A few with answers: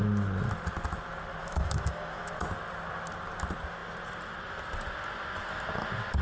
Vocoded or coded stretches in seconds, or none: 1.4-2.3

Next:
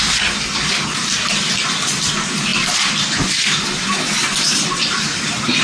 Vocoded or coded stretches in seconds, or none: none

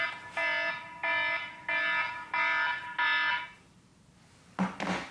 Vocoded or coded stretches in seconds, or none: none

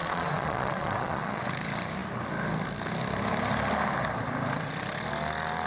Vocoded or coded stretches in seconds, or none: 0.0-1.4

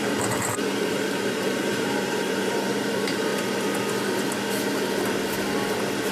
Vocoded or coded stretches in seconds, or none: 0.0-3.3

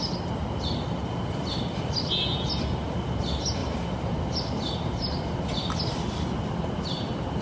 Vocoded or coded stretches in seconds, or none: 3.6-5.8